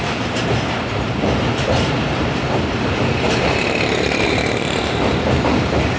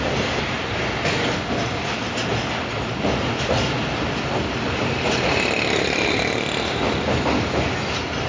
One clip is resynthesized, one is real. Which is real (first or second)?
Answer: second